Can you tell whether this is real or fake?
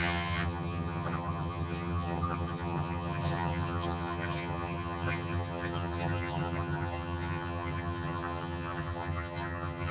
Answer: fake